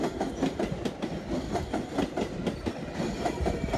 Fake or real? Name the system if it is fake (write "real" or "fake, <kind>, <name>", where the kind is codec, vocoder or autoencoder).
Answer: real